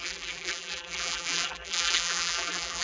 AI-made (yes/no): yes